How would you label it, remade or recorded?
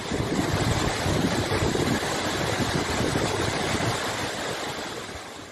recorded